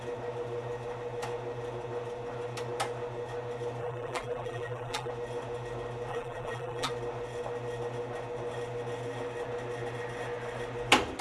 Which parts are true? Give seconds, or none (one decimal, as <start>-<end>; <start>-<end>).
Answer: 0.0-3.8; 5.1-6.1; 6.9-11.2